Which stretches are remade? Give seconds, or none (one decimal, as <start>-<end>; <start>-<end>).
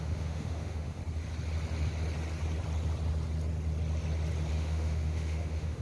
0.0-1.0; 4.5-5.8